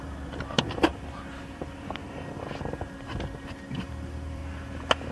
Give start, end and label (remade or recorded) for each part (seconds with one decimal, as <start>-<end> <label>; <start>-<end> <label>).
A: 0.0-0.9 remade; 0.9-3.8 recorded; 3.8-4.4 remade; 4.4-5.1 recorded